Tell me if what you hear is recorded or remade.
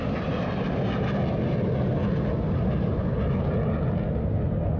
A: recorded